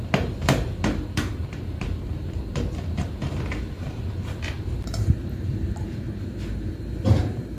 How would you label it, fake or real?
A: fake